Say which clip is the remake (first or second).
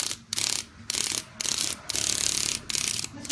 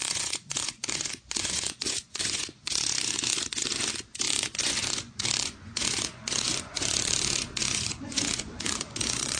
second